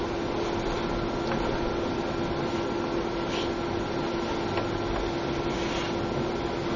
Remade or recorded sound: recorded